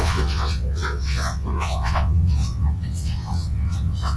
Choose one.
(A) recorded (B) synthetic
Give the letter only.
B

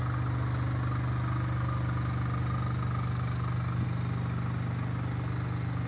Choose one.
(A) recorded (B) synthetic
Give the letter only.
A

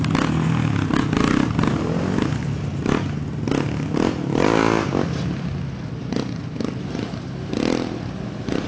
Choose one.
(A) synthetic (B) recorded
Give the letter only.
B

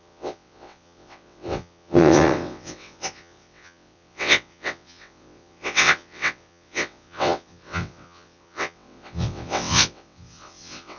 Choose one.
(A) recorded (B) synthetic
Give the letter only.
B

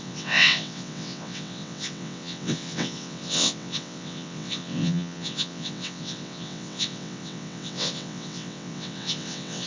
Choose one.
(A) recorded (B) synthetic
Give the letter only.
B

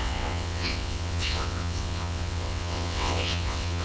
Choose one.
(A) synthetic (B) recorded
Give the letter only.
A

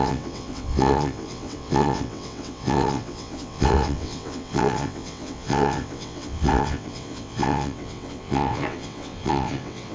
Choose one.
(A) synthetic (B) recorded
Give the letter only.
A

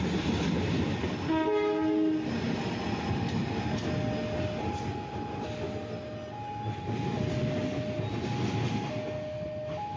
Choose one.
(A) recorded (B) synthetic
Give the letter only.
A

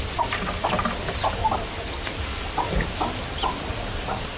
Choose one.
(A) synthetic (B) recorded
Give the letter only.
B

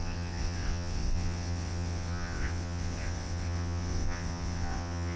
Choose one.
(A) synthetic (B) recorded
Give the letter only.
A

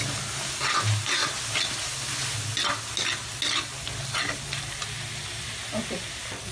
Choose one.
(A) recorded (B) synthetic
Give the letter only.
A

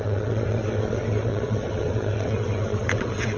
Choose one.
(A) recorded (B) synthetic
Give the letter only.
B